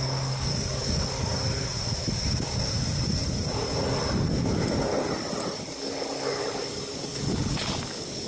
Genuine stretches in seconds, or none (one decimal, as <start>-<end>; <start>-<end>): 1.3-5.6